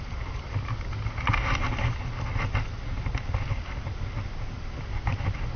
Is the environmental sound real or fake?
real